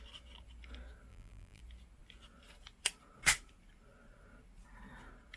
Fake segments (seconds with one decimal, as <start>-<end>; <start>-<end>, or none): 1.1-1.6